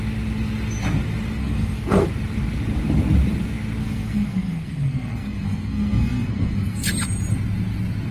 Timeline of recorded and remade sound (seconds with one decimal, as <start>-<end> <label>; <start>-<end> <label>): 0.0-1.4 recorded; 1.4-2.1 remade; 2.1-3.8 recorded; 3.8-6.9 remade; 6.9-8.1 recorded